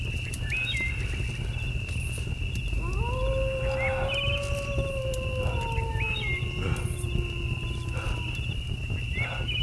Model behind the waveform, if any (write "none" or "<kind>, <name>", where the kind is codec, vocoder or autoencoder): none